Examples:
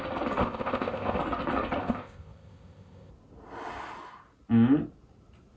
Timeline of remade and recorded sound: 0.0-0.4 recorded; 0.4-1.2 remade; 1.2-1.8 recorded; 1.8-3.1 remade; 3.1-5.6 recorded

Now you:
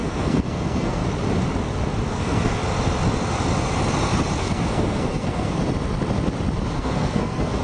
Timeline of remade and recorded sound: 0.0-1.0 remade; 1.0-2.1 recorded; 2.1-2.6 remade; 2.6-4.4 recorded; 4.4-5.6 remade; 5.6-6.7 recorded; 6.7-7.6 remade

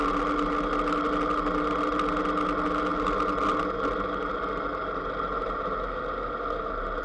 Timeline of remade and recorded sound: 0.0-7.0 recorded

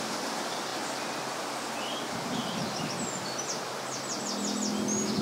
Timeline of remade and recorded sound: 0.0-5.2 recorded

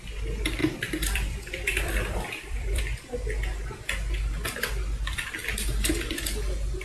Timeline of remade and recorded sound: 0.0-0.6 recorded; 0.6-2.8 remade; 2.8-6.8 recorded